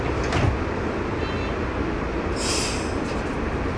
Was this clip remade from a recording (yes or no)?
no